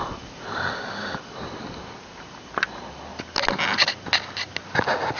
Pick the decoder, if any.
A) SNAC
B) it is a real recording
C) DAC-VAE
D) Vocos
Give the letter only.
B